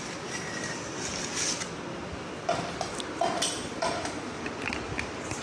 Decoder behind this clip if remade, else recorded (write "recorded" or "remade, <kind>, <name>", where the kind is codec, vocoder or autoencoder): recorded